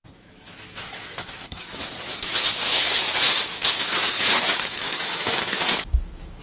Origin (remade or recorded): remade